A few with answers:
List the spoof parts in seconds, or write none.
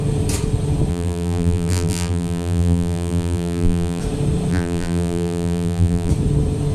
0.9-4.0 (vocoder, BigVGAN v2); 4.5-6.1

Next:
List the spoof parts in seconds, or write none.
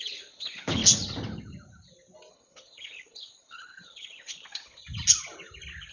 0.0-0.8 (codec, HILCodec); 2.3-4.8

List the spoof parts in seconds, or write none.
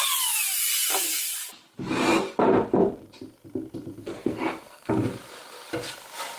4.0-4.9 (codec, SNAC)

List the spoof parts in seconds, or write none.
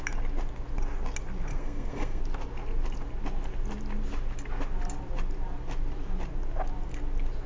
1.5-2.2 (codec, SNAC)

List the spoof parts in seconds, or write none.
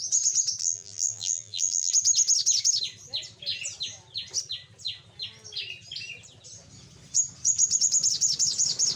0.6-1.9 (vocoder, BigVGAN v2)